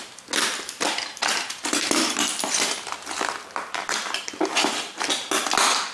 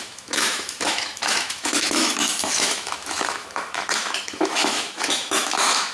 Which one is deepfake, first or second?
second